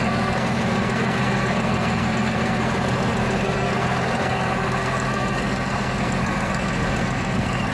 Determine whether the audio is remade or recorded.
remade